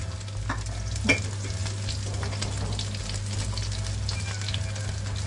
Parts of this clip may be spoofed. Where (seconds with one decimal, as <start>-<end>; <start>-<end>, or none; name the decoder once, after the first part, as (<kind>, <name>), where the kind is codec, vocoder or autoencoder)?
none